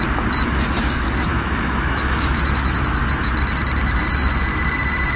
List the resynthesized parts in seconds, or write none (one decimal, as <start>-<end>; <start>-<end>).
1.3-3.3